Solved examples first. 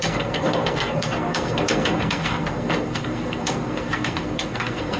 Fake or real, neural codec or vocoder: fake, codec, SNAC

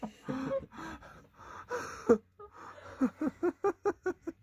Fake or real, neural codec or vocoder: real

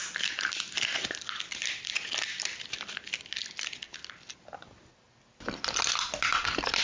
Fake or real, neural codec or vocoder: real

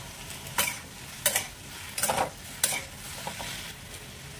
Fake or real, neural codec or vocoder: real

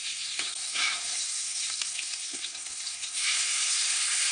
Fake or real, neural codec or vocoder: fake, codec, SNAC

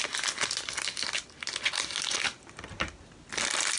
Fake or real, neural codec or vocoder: real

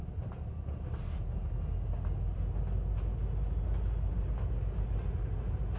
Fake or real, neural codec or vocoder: real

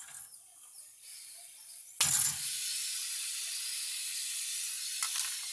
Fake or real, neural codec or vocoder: real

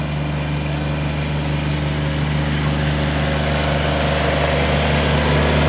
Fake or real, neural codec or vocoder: real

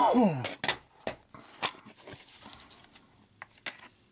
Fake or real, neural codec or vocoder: real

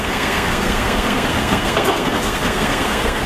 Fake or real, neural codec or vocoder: fake, codec, SNAC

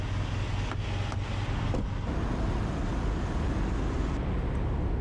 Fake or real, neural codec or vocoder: real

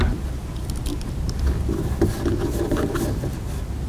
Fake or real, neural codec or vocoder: real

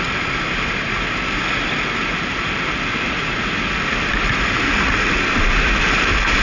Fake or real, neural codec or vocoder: real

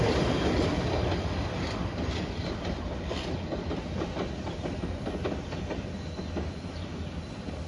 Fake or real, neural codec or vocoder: real